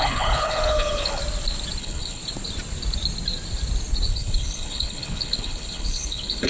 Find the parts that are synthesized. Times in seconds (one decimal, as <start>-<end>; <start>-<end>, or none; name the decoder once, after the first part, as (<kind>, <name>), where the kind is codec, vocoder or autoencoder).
0.0-1.2 (codec, HILCodec); 1.8-2.2; 4.1-6.5